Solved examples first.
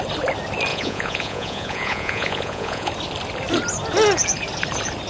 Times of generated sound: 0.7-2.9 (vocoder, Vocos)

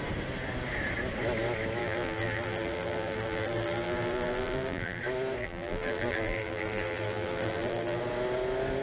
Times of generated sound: 1.8-5.0 (vocoder, BigVGAN v2); 5.4-8.0

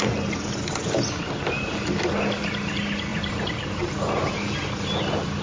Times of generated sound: 3.1-4.3 (vocoder, BigVGAN v2)